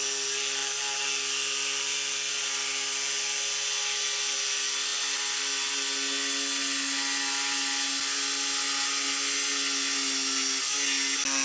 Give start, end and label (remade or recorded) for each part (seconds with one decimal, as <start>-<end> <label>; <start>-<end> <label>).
0.0-11.4 recorded